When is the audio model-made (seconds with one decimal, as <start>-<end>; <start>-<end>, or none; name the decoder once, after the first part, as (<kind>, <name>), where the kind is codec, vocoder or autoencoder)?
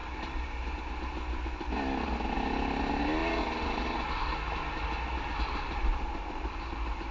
none